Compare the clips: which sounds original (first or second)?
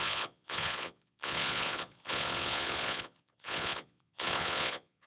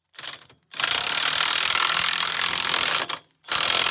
second